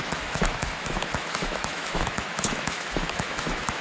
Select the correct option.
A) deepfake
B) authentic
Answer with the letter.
A